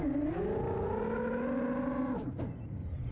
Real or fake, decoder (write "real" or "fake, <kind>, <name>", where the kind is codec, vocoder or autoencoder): real